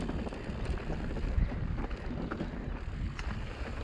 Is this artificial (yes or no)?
no